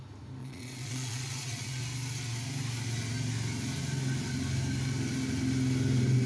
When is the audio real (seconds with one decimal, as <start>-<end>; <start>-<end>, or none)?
0.0-0.4; 1.8-6.3